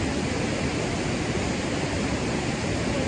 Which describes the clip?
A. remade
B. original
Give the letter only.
B